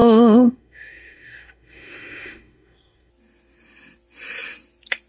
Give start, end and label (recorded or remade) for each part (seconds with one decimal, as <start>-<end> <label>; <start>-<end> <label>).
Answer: 0.0-3.1 remade; 3.1-5.1 recorded